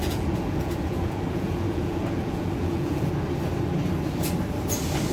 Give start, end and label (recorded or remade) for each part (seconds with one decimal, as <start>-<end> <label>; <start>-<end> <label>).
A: 0.0-3.1 remade; 3.1-5.1 recorded